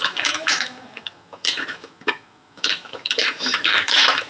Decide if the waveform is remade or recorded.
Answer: remade